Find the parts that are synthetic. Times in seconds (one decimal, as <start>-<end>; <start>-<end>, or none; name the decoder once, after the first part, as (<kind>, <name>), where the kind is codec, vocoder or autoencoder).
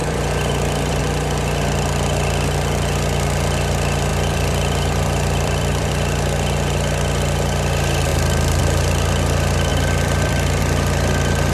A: 0.0-1.0 (vocoder, BigVGAN v2); 4.1-5.9; 9.7-10.6